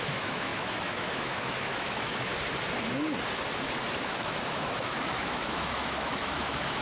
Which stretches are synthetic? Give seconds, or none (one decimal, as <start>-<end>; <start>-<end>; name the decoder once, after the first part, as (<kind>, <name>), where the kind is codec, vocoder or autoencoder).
0.0-2.3 (autoencoder, DAC-VAE); 4.0-6.8

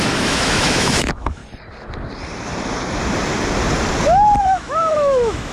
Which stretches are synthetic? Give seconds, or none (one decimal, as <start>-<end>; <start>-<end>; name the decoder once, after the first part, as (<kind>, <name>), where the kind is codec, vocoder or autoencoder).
0.0-1.4 (autoencoder, DAC-VAE); 4.4-5.5

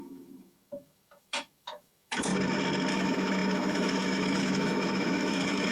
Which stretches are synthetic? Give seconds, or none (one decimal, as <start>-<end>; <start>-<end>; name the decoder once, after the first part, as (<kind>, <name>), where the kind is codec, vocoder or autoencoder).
0.0-2.3 (autoencoder, DAC-VAE); 2.9-5.7

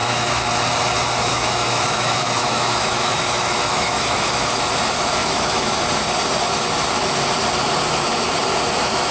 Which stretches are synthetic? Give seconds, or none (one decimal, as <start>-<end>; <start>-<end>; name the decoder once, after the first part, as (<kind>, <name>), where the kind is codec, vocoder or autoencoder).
0.0-0.5 (autoencoder, DAC-VAE); 1.3-4.6; 5.2-5.8

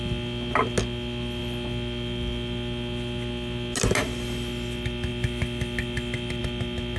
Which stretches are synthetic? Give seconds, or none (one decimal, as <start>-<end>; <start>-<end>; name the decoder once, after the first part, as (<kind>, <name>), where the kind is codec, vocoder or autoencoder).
none

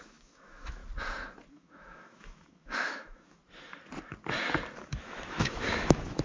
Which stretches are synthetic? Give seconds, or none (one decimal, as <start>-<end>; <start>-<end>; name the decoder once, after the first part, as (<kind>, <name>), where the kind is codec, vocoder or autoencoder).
0.0-0.8 (autoencoder, DAC-VAE); 1.5-3.4; 4.8-6.2